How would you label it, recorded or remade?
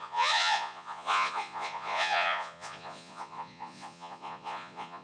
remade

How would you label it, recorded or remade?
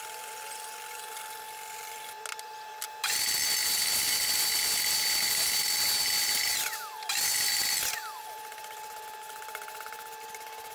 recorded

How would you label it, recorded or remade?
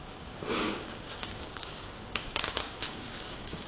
remade